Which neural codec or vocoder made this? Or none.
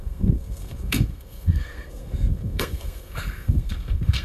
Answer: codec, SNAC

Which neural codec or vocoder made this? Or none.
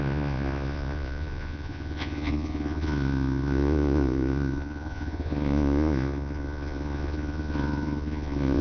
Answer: vocoder, Vocos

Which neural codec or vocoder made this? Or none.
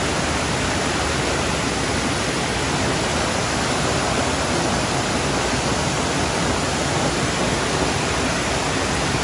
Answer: none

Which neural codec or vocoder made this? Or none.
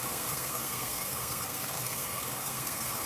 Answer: codec, SNAC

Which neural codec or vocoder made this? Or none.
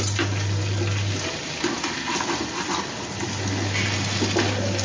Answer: none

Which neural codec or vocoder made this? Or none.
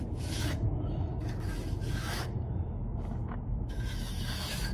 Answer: autoencoder, DAC-VAE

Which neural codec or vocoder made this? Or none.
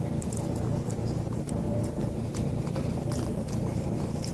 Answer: none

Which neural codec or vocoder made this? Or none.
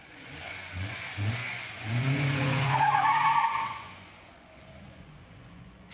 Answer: vocoder, Vocos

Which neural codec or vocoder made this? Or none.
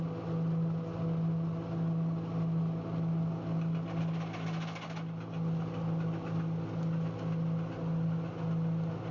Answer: none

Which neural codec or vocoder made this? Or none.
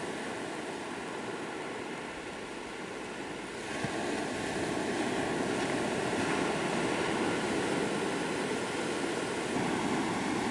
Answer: none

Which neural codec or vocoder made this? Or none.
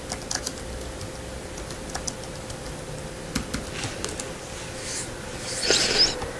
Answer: none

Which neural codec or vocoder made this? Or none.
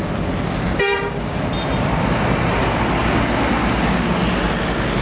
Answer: none